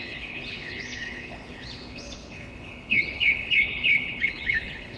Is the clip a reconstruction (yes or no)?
yes